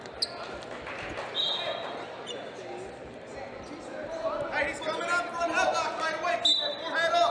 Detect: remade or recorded recorded